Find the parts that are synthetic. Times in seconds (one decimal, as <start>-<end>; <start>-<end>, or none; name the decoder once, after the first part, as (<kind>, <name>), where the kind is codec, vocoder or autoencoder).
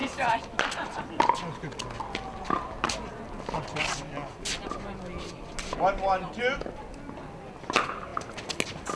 none